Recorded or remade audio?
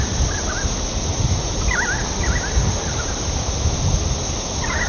recorded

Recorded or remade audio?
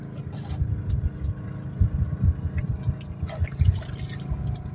recorded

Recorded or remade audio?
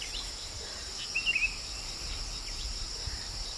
recorded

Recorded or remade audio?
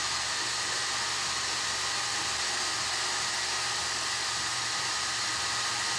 recorded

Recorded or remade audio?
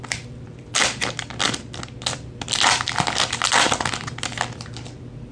recorded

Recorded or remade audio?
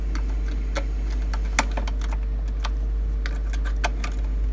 recorded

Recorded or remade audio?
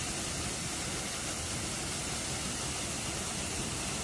recorded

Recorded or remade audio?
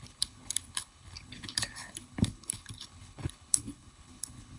remade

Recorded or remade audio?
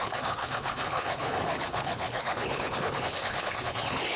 remade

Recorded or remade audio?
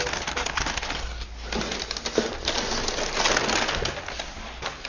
recorded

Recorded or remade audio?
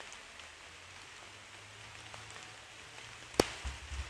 recorded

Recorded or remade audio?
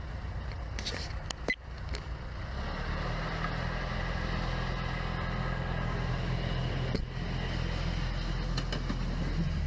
recorded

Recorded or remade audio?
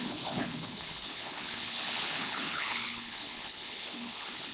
remade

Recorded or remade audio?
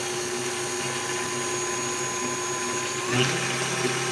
recorded